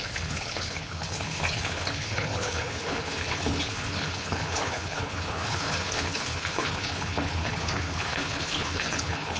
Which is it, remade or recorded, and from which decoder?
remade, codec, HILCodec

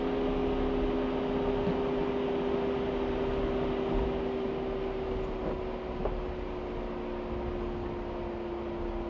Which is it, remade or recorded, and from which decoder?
recorded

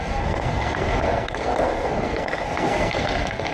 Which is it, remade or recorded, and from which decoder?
remade, codec, SNAC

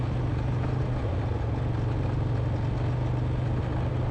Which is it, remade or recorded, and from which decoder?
recorded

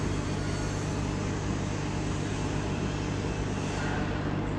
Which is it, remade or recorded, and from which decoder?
recorded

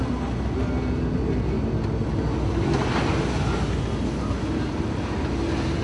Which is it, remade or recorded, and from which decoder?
recorded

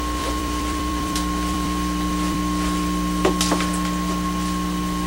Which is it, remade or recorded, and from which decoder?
remade, vocoder, BigVGAN v2